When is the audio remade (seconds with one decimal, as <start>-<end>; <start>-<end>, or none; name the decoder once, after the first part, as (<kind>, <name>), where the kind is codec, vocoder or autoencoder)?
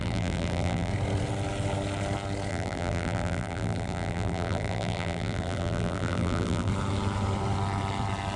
0.0-0.9 (vocoder, BigVGAN v2); 2.5-6.7